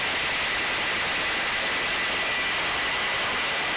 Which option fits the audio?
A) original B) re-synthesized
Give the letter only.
A